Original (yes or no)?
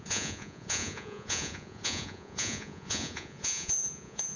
no